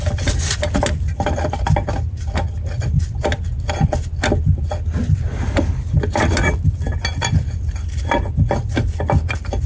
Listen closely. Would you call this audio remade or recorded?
recorded